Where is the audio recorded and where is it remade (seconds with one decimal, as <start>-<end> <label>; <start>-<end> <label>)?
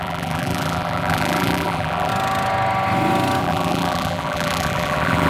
0.0-2.1 remade; 2.1-3.4 recorded; 3.4-5.3 remade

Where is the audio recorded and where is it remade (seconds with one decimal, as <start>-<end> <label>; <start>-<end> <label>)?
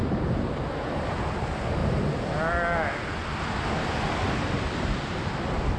0.0-0.7 remade; 0.7-5.8 recorded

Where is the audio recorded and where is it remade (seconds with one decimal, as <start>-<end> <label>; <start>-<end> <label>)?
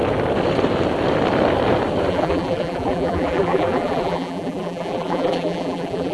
0.0-2.1 recorded; 2.1-6.1 remade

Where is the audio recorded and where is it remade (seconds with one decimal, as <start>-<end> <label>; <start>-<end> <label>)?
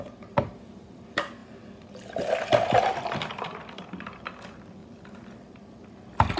0.0-1.4 recorded; 1.4-3.3 remade; 3.3-4.8 recorded; 4.8-5.5 remade; 5.5-6.4 recorded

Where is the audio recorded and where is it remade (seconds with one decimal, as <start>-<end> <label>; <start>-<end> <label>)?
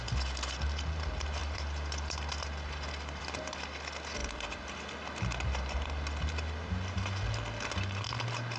0.0-1.4 recorded; 1.4-3.2 remade; 3.2-4.2 recorded; 4.2-4.9 remade; 4.9-8.6 recorded